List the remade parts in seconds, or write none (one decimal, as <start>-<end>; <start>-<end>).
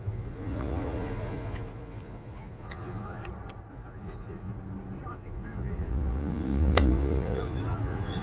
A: 0.0-3.2; 3.7-4.5; 5.1-8.2